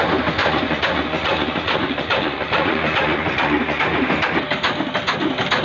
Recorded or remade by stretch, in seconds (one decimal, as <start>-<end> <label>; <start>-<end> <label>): 0.0-0.4 recorded; 0.4-3.8 remade; 3.8-5.6 recorded